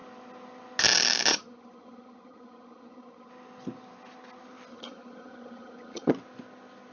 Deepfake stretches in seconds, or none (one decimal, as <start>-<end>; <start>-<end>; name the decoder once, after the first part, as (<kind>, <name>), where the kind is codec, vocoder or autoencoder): 1.3-3.3 (vocoder, HiFi-GAN); 4.7-6.1

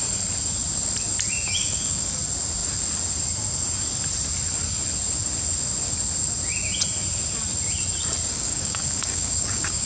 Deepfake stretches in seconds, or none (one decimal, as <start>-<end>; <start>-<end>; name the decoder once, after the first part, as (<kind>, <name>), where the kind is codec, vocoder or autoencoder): 1.6-2.2 (codec, DAC); 8.3-9.9

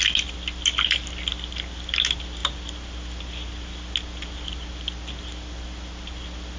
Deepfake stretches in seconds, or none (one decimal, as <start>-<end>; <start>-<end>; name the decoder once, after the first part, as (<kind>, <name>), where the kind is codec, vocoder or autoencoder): none

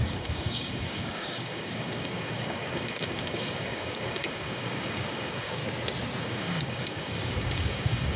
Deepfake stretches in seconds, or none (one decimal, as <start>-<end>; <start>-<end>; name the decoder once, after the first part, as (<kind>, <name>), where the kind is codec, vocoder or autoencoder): 0.0-5.6 (codec, DAC); 6.2-8.2